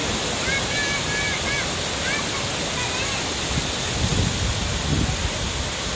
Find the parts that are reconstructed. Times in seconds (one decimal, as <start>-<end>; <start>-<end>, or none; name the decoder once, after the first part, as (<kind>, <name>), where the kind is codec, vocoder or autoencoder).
none